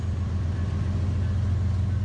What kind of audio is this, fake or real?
real